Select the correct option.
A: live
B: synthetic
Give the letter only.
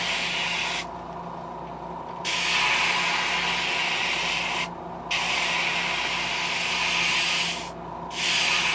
A